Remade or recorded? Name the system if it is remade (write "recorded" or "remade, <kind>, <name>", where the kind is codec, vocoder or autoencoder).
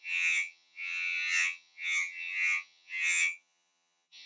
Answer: remade, vocoder, HiFi-GAN